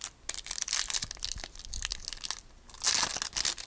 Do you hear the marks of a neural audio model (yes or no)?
no